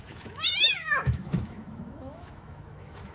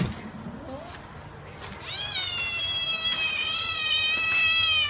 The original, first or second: second